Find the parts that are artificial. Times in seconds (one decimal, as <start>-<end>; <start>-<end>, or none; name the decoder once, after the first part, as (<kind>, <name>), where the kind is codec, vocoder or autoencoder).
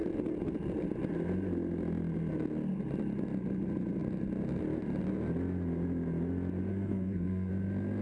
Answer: 6.7-7.5 (codec, SNAC)